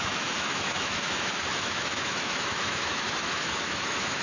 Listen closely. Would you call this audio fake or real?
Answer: fake